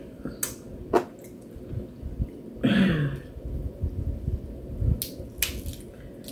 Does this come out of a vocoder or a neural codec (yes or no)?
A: no